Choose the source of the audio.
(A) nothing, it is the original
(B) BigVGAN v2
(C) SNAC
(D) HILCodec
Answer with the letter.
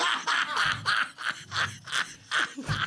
A